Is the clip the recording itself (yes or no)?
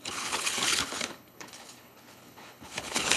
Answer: no